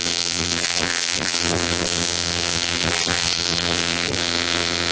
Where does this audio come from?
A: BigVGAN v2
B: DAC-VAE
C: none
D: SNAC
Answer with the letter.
A